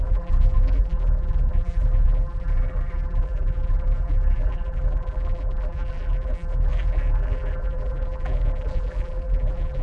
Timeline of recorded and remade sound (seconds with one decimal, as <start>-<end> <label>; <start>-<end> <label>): 0.0-9.8 remade

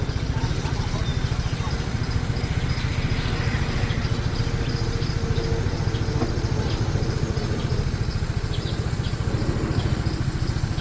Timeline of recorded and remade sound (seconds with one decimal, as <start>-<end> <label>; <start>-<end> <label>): 0.0-10.8 recorded